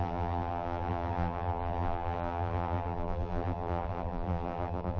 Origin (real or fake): fake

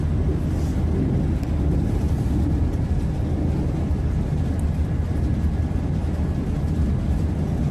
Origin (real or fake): real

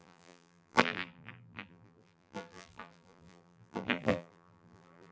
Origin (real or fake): fake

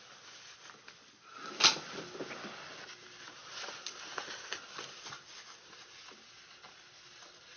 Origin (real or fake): real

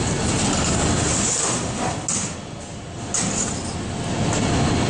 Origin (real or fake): real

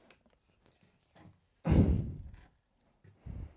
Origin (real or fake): real